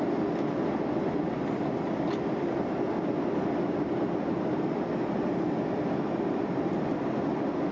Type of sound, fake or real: real